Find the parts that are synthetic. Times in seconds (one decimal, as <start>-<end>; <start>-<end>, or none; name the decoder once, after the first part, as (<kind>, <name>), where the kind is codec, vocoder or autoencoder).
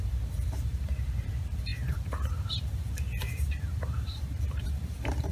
0.0-5.3 (vocoder, BigVGAN v2)